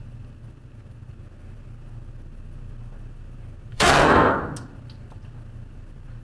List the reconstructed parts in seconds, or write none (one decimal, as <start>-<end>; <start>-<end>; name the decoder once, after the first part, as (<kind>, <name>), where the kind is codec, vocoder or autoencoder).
3.7-4.4 (codec, SNAC)